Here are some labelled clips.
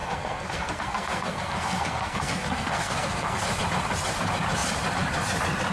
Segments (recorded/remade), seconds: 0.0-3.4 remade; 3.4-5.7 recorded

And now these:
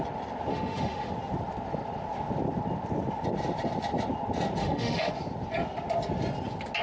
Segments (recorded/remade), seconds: 0.0-0.5 recorded; 0.5-1.1 remade; 1.1-4.6 recorded; 4.6-5.1 remade; 5.1-6.8 recorded

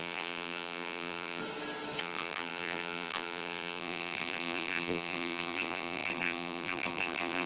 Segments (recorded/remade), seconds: 0.0-1.4 remade; 1.4-2.0 recorded; 2.0-7.5 remade